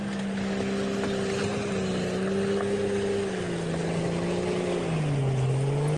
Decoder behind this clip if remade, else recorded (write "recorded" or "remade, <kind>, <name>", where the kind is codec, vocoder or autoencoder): recorded